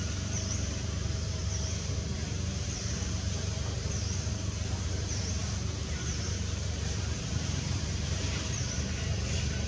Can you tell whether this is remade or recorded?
remade